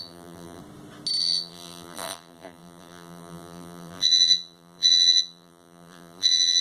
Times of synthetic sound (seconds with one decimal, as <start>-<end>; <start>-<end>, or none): 0.0-0.6; 1.2-6.6